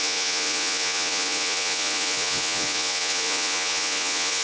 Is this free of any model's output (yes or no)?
no